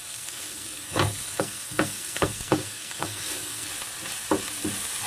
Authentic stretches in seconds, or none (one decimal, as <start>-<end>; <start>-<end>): 3.7-5.1